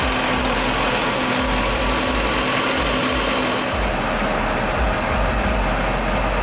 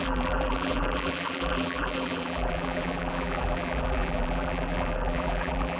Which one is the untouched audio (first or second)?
first